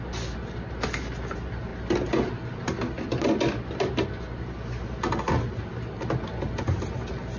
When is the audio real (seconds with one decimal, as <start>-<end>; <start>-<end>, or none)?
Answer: 0.0-7.4